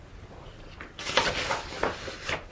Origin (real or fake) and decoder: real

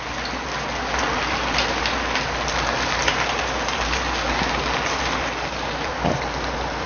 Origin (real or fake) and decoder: real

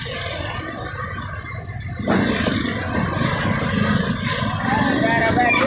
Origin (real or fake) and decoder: real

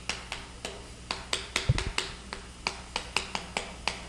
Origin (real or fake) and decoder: real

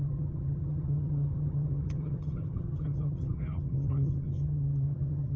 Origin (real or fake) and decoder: fake, vocoder, HiFi-GAN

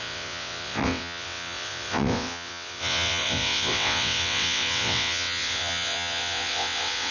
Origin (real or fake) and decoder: fake, vocoder, WaveNeXt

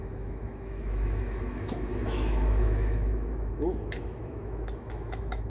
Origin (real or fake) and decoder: fake, autoencoder, DAC-VAE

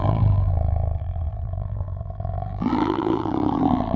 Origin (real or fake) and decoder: fake, vocoder, BigVGAN v2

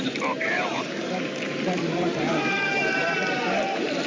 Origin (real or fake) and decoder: fake, vocoder, BigVGAN v2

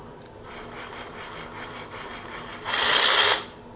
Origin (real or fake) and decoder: real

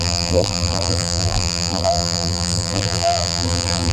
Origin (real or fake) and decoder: fake, vocoder, BigVGAN v2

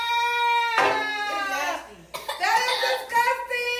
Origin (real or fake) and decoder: real